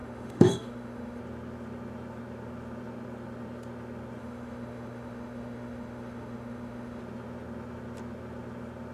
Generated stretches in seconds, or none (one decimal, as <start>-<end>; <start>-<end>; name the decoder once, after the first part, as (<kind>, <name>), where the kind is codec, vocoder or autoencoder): 0.0-1.2 (autoencoder, DAC-VAE); 4.2-7.0